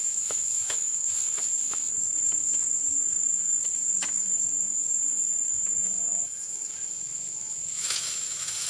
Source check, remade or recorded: remade